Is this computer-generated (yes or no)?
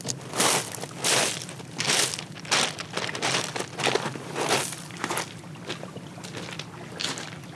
no